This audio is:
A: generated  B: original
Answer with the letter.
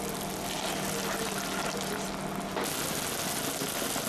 B